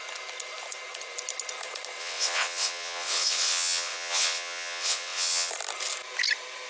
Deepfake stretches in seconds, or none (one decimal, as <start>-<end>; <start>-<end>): 2.0-5.5

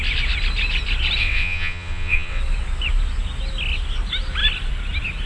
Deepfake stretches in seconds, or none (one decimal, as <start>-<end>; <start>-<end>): 1.2-2.4

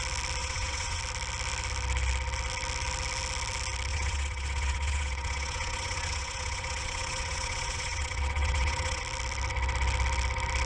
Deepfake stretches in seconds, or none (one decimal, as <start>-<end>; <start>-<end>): 0.4-1.0; 3.9-9.0

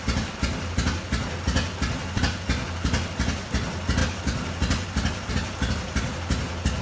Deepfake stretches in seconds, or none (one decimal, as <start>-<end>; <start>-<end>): none

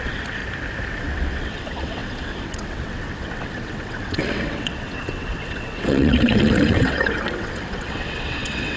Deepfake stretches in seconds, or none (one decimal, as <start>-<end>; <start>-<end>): 0.0-0.4; 1.0-8.8

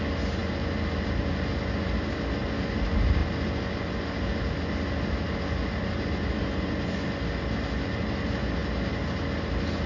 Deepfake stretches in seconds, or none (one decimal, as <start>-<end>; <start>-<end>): none

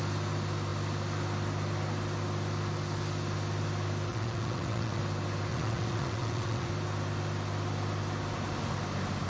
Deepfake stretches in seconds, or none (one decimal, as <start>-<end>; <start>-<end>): 4.1-5.0; 5.5-6.7